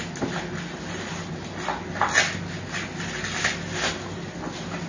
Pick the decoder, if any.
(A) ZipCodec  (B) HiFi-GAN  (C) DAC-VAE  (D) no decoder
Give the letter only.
D